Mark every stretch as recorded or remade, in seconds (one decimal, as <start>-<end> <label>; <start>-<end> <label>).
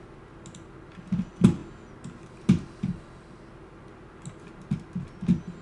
0.0-5.6 recorded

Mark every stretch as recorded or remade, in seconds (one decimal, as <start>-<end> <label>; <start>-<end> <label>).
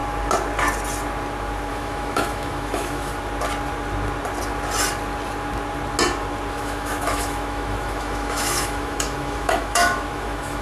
0.0-1.7 recorded; 1.7-3.1 remade; 3.1-6.5 recorded; 6.5-10.6 remade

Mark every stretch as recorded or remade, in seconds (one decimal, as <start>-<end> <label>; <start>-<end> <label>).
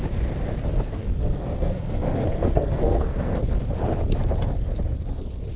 0.0-1.0 recorded; 1.0-3.4 remade; 3.4-5.6 recorded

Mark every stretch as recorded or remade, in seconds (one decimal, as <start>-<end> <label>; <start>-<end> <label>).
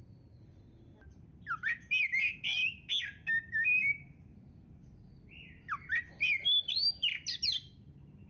0.0-2.6 recorded; 2.6-5.1 remade; 5.1-8.3 recorded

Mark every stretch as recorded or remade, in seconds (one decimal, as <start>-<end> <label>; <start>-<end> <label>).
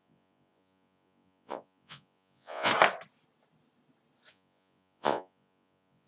0.0-2.7 remade; 2.7-4.3 recorded; 4.3-6.1 remade